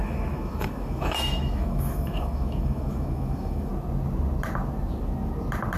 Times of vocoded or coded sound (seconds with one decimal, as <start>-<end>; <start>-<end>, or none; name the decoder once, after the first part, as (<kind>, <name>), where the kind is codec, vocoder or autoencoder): 0.0-3.7 (autoencoder, DAC-VAE)